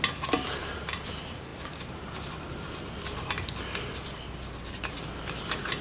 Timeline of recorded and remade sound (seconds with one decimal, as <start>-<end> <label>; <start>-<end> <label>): 0.0-5.8 recorded